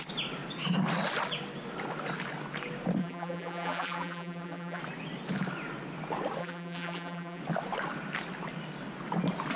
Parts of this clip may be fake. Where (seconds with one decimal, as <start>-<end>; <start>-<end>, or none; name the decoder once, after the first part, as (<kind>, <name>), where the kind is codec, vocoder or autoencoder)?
3.0-4.8 (vocoder, BigVGAN v2); 6.4-7.4